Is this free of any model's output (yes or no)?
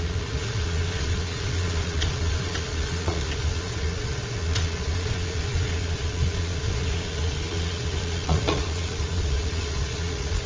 no